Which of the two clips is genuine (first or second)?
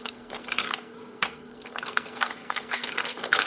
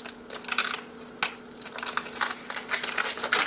second